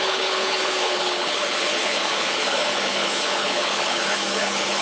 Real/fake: fake